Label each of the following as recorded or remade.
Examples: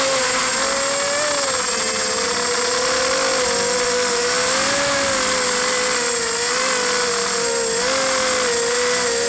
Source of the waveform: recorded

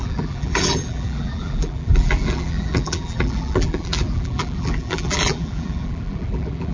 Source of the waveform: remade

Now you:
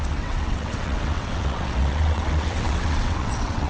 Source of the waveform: remade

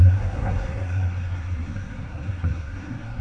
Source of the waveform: remade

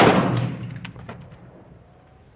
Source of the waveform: remade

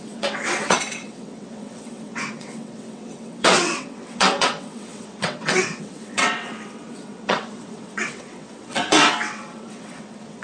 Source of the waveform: remade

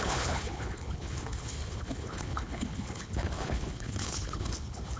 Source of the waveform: remade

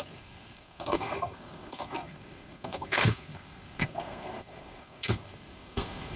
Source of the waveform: remade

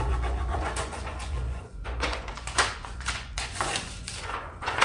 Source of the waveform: remade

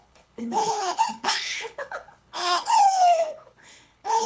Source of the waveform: remade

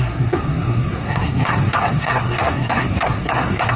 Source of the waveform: remade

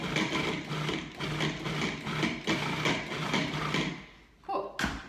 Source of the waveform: recorded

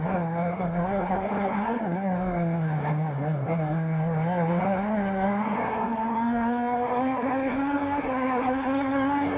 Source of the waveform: remade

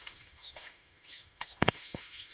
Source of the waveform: remade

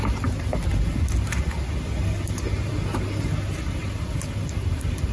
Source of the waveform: recorded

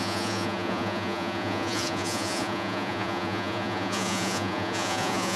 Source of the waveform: remade